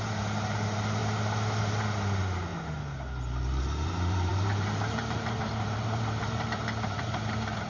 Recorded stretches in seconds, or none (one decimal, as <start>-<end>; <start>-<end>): 1.0-1.6; 2.5-3.6